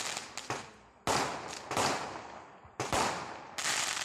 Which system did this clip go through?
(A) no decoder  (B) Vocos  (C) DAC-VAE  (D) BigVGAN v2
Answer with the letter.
A